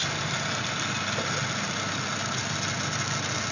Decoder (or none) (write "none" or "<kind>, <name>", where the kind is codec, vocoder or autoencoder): none